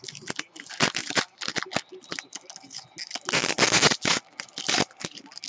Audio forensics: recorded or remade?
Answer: recorded